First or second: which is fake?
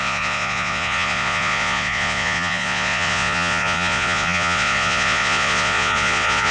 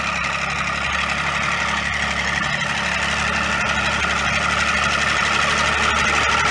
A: first